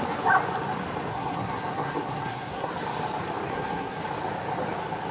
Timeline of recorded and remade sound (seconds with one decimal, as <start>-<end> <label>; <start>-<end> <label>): 0.0-1.1 recorded; 1.1-2.7 remade; 2.7-3.5 recorded; 3.5-4.0 remade; 4.0-5.1 recorded